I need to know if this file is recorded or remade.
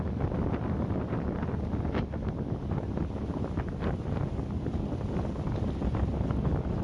recorded